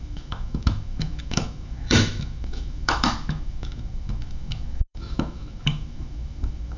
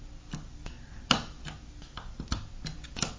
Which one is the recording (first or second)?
second